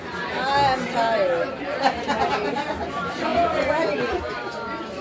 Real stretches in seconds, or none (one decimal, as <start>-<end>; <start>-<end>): 0.0-5.0